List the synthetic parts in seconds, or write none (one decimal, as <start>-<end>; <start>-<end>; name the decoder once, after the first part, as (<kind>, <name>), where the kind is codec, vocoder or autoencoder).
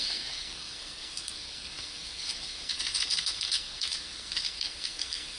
0.0-5.4 (codec, SNAC)